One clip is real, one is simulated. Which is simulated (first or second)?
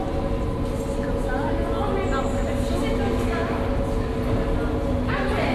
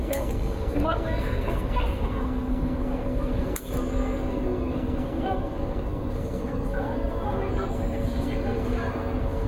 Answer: second